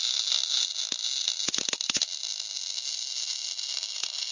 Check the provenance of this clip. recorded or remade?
recorded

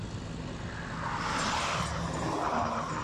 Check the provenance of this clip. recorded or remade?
recorded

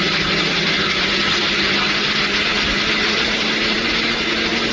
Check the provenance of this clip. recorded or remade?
recorded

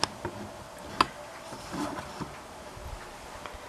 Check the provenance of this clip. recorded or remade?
recorded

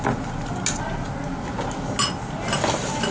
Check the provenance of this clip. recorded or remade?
recorded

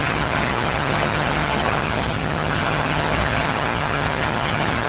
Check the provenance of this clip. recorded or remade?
remade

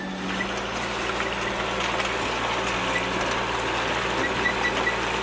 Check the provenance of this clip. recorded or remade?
recorded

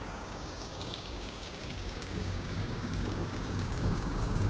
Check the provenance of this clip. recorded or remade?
remade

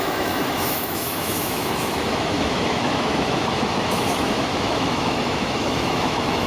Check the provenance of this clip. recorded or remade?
remade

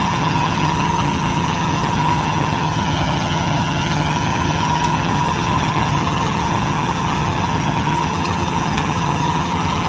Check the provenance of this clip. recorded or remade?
remade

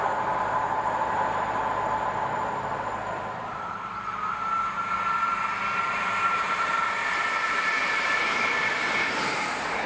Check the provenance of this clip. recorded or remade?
remade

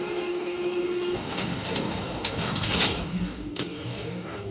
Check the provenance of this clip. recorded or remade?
remade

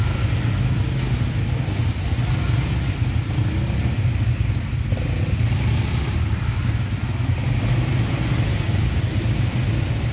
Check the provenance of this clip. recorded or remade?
recorded